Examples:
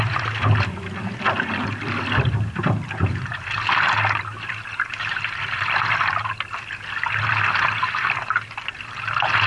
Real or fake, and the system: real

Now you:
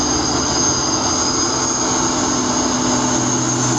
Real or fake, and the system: real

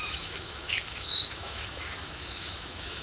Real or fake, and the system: fake, autoencoder, DAC-VAE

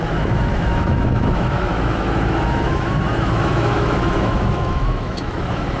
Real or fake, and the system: fake, autoencoder, DAC-VAE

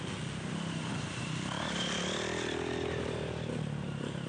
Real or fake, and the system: real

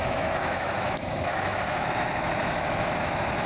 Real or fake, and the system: fake, autoencoder, DAC-VAE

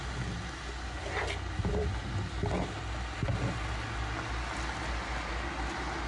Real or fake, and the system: real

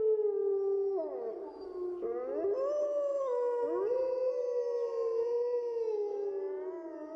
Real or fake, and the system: real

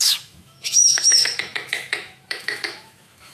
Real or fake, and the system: fake, autoencoder, DAC-VAE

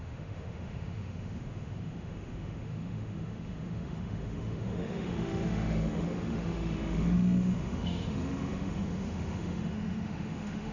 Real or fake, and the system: fake, autoencoder, DAC-VAE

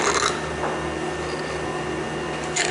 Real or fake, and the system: real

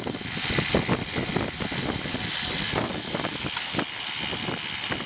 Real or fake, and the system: real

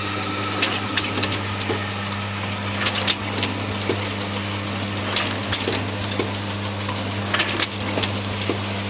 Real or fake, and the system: real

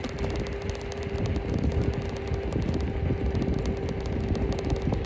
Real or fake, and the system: real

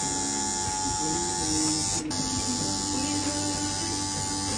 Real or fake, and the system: real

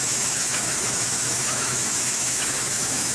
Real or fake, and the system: fake, autoencoder, DAC-VAE